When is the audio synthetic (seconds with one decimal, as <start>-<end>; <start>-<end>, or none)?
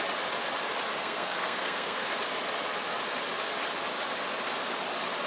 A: 1.0-2.1